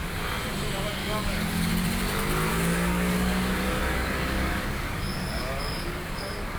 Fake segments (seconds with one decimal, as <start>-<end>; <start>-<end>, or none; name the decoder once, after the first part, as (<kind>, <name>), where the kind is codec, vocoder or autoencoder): 1.0-1.7 (codec, DAC); 2.5-6.6